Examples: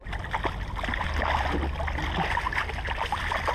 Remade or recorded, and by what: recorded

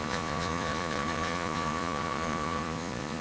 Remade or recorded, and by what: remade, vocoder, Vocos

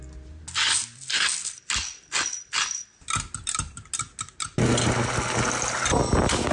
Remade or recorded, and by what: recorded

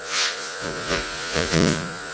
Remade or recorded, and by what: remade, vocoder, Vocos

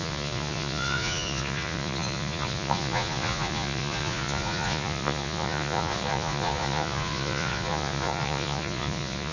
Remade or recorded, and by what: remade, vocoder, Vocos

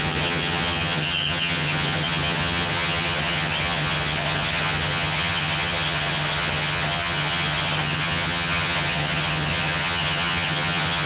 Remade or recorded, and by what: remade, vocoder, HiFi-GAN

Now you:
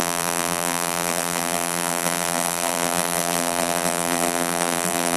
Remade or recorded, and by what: remade, vocoder, BigVGAN v2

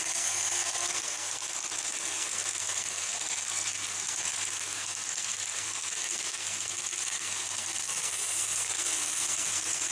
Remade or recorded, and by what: remade, codec, SNAC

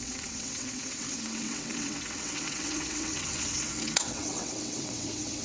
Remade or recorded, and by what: remade, vocoder, WaveNeXt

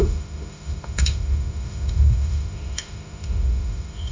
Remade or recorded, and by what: remade, autoencoder, DAC-VAE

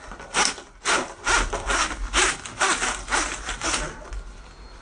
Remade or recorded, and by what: recorded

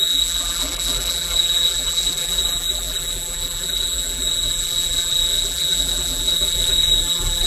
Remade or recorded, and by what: remade, vocoder, BigVGAN v2